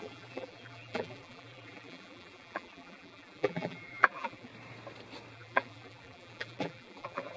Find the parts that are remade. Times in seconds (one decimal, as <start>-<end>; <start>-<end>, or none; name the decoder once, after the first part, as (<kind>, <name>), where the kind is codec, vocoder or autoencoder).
0.0-4.5 (vocoder, BigVGAN v2); 5.3-7.4